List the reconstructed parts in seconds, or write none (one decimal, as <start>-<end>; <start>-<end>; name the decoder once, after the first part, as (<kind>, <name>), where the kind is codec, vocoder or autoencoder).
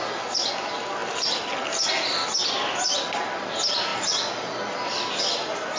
none